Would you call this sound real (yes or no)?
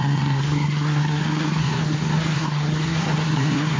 no